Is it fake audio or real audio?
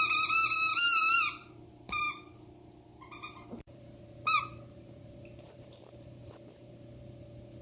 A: fake